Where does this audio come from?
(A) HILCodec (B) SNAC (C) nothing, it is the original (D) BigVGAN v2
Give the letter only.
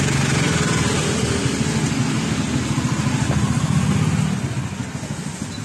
C